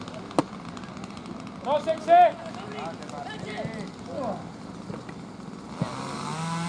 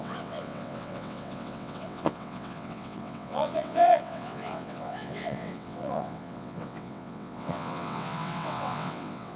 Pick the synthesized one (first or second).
second